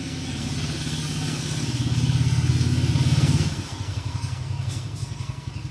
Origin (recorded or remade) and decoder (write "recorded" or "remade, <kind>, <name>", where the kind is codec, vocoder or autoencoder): remade, codec, SNAC